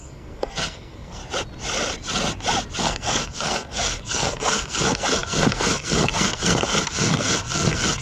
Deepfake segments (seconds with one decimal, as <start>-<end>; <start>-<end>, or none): 0.0-1.2; 2.8-8.0